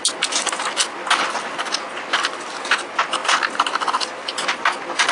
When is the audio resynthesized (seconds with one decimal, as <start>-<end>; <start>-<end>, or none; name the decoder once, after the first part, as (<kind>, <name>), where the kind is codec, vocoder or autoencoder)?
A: none